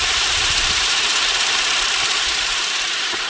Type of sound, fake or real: fake